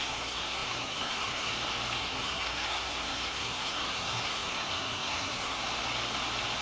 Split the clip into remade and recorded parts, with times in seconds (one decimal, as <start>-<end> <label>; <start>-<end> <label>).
0.0-1.5 remade; 1.5-2.0 recorded; 2.0-5.6 remade; 5.6-6.6 recorded